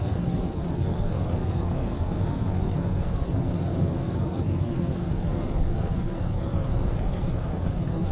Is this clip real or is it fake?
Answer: fake